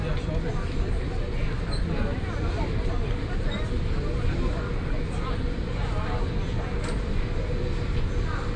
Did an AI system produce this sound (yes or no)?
no